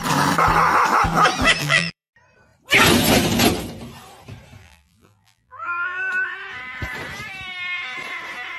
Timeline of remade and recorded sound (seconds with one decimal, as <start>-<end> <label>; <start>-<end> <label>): 0.0-1.6 recorded; 1.6-2.1 remade; 2.1-4.6 recorded; 4.6-6.0 remade; 6.0-8.6 recorded